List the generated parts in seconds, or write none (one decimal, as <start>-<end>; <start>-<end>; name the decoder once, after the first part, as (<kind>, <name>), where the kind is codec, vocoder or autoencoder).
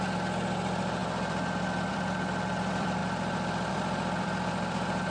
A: 0.0-1.0 (vocoder, BigVGAN v2); 1.9-3.0; 3.7-5.1